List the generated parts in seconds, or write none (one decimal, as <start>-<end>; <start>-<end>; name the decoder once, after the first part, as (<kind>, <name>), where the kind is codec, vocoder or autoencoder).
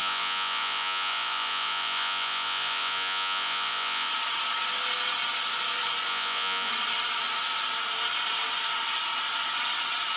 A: 0.0-4.1 (vocoder, Vocos); 6.1-6.7